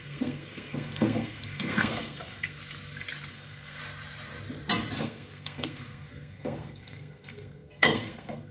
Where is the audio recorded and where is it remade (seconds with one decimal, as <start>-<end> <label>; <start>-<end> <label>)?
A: 0.0-2.6 remade; 2.6-3.3 recorded; 3.3-3.8 remade; 3.8-5.0 recorded; 5.0-8.5 remade